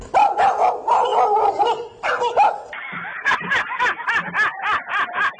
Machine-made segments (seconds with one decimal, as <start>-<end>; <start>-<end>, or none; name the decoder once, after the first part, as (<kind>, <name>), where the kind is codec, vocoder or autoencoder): 1.1-1.6 (vocoder, BigVGAN v2); 2.9-3.5